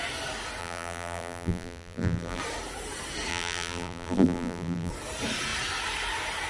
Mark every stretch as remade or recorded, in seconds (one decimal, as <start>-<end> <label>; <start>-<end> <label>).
0.0-0.6 recorded; 0.6-2.4 remade; 2.4-3.3 recorded; 3.3-4.9 remade; 4.9-6.5 recorded

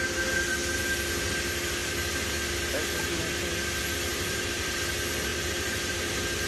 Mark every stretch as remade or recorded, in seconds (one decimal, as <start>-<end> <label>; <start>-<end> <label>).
0.0-4.1 recorded; 4.1-4.7 remade; 4.7-5.3 recorded; 5.3-6.1 remade; 6.1-6.5 recorded

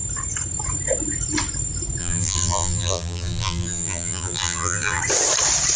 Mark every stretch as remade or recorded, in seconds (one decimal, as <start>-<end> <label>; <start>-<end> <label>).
0.0-2.0 recorded; 2.0-5.0 remade; 5.0-5.8 recorded